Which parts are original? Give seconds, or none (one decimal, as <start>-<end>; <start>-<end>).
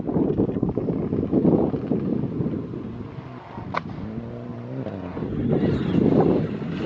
0.0-6.9